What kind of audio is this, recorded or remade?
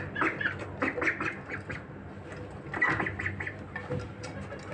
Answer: recorded